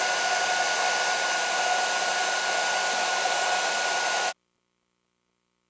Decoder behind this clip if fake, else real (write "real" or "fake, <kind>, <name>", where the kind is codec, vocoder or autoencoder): real